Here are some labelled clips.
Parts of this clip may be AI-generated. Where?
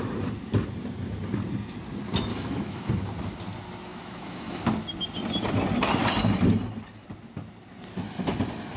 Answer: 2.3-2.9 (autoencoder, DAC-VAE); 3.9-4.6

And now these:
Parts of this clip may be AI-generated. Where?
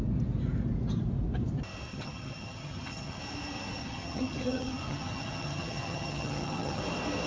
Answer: 1.9-3.2 (vocoder, HiFi-GAN); 3.8-6.8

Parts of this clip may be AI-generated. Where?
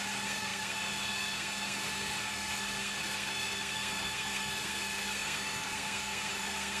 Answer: 0.0-6.8 (codec, SNAC)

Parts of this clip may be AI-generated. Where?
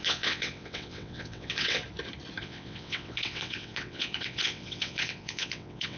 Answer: 0.0-1.8 (vocoder, WaveNeXt); 2.4-6.0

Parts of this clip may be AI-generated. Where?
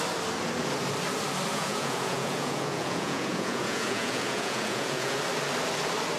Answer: 1.5-5.2 (vocoder, Vocos)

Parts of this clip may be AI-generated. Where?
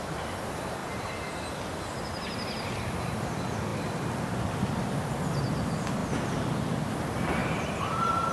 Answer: none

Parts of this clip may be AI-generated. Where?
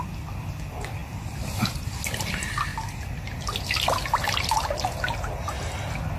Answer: none